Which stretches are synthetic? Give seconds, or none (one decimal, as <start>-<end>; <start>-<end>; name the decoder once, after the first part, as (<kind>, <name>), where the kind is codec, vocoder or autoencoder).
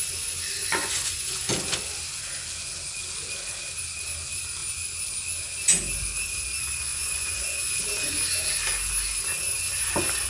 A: 0.6-1.5 (vocoder, Vocos); 6.9-7.8